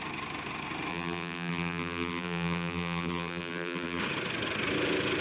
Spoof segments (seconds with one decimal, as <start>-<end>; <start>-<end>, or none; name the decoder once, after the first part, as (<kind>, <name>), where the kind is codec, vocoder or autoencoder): 0.9-4.0 (vocoder, BigVGAN v2)